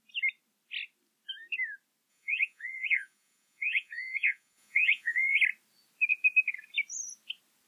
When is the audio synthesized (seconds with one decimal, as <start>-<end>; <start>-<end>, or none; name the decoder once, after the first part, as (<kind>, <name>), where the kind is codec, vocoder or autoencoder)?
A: 2.1-5.4 (vocoder, Vocos)